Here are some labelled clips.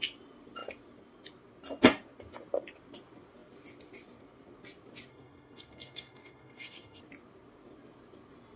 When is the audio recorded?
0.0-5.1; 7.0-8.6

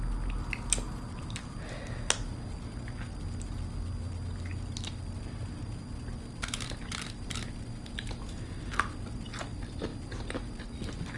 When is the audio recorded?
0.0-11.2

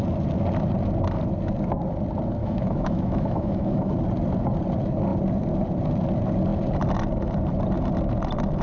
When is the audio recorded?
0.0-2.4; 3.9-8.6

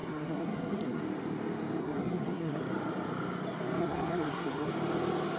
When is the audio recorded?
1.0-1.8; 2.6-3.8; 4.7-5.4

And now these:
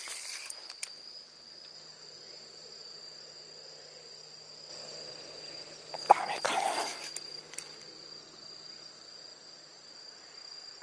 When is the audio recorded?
0.0-4.7; 6.1-9.3; 10.2-10.8